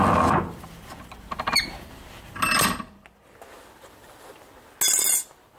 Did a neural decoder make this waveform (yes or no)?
no